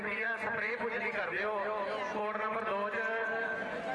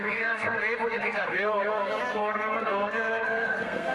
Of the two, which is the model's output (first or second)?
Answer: second